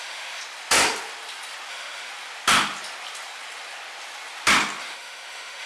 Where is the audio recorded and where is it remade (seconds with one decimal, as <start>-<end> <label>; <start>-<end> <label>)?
0.0-0.4 remade; 0.4-1.7 recorded; 1.7-2.1 remade; 2.1-4.8 recorded; 4.8-5.7 remade